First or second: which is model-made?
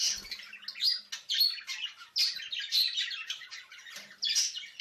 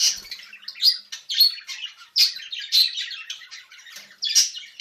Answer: second